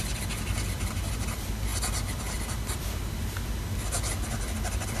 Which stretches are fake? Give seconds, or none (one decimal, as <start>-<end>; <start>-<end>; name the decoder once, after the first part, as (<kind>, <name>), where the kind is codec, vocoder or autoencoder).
none